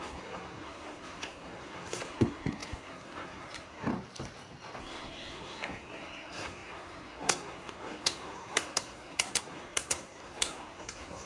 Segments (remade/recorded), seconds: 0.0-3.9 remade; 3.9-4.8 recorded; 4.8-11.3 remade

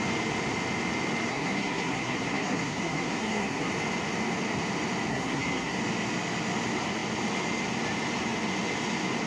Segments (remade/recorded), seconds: 0.0-1.3 recorded; 1.3-3.7 remade; 3.7-5.1 recorded; 5.1-5.8 remade; 5.8-9.3 recorded

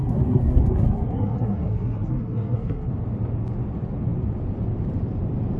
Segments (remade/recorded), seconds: 0.0-2.9 remade; 2.9-5.6 recorded

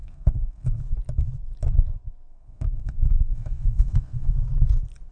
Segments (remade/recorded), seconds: 0.0-0.8 remade; 0.8-2.3 recorded; 2.3-4.3 remade; 4.3-5.1 recorded

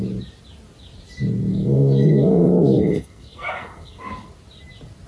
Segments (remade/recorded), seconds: 0.0-1.5 recorded; 1.5-4.3 remade; 4.3-5.1 recorded